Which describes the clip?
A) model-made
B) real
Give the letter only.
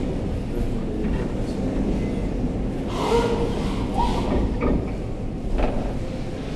B